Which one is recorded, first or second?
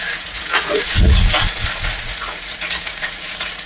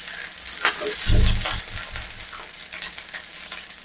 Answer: second